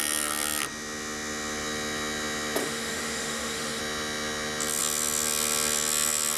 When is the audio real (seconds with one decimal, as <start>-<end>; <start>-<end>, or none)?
0.0-2.6; 3.8-6.4